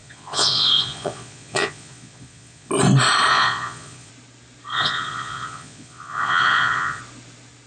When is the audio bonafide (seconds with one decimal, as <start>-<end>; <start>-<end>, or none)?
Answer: 2.7-3.3; 4.1-4.7; 7.0-7.7